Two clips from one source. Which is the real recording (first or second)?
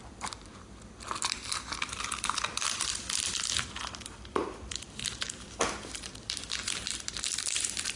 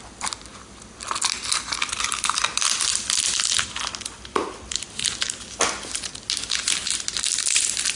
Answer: second